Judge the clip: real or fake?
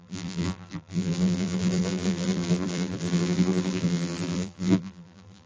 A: fake